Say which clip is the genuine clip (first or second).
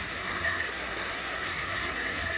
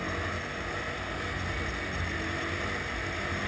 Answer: second